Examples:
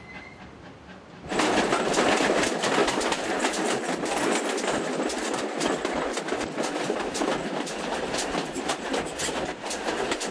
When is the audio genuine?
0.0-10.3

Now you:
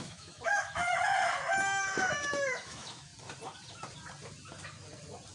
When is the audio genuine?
0.8-1.9; 3.1-5.3